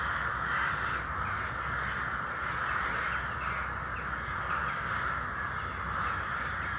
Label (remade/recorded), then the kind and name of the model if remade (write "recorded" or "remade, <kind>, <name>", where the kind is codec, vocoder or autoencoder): recorded